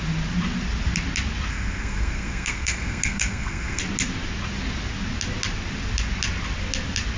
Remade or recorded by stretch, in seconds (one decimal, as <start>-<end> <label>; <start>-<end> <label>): 0.0-1.5 recorded; 1.5-3.8 remade; 3.8-7.2 recorded